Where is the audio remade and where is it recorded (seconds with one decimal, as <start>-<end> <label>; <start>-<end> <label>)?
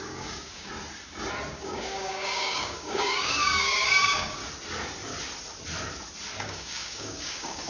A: 0.0-0.7 remade; 0.7-1.5 recorded; 1.5-4.4 remade; 4.4-6.4 recorded; 6.4-7.7 remade